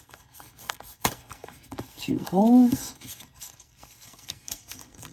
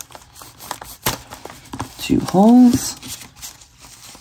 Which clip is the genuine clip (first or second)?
second